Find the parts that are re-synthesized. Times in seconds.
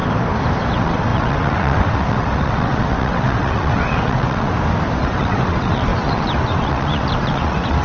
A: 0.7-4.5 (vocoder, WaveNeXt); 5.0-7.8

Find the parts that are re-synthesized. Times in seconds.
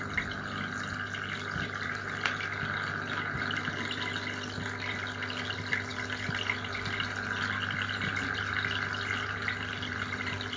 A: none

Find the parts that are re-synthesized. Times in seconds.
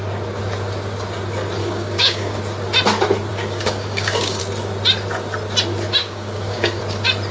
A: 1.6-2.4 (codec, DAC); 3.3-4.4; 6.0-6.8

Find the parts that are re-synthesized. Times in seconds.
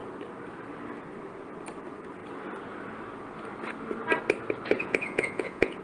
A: 4.8-5.8 (vocoder, Vocos)